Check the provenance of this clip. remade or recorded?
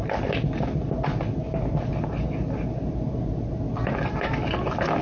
recorded